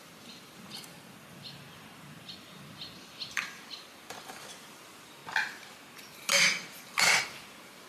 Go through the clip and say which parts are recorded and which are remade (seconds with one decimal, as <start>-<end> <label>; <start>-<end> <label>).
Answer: 0.0-5.2 remade; 5.2-7.2 recorded; 7.2-7.9 remade